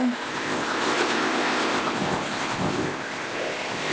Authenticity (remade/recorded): remade